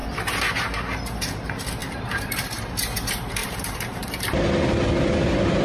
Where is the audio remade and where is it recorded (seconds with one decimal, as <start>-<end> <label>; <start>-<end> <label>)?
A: 0.0-1.8 recorded; 1.8-2.6 remade; 2.6-3.4 recorded; 3.4-4.2 remade; 4.2-5.6 recorded